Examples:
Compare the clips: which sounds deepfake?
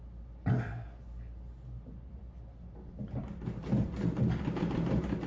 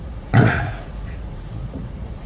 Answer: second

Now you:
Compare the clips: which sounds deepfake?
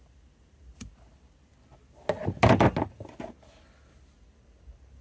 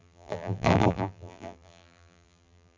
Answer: second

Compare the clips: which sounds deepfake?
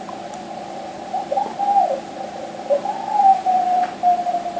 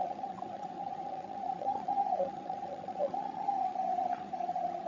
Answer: second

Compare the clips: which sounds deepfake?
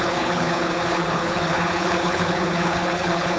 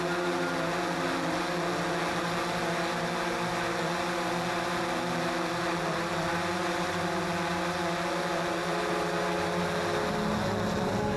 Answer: first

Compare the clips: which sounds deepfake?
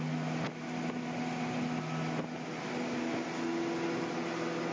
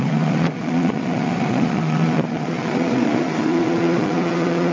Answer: second